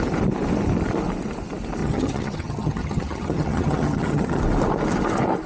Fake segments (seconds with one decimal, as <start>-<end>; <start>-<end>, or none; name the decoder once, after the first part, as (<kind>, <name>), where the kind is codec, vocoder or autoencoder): 1.8-4.4 (vocoder, HiFi-GAN)